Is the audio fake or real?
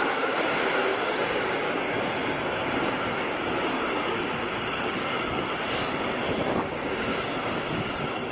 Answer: fake